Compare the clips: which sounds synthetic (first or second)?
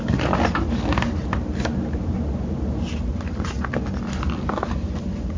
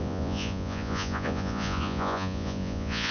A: second